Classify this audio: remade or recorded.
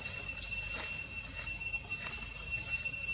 recorded